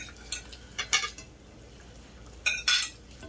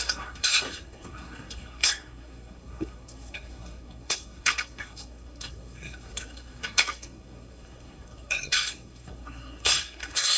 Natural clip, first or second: first